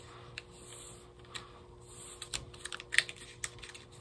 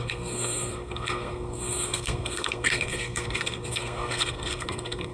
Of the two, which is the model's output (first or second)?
second